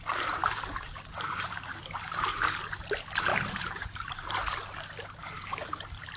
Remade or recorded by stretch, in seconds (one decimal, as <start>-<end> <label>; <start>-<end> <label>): 0.0-0.4 recorded; 0.4-1.8 remade; 1.8-3.3 recorded; 3.3-6.2 remade